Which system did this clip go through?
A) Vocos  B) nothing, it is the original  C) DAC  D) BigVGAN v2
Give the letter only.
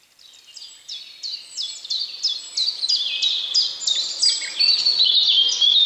B